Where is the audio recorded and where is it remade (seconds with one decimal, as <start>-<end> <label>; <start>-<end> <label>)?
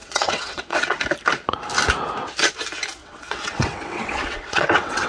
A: 0.0-1.0 remade; 1.0-3.0 recorded; 3.0-5.1 remade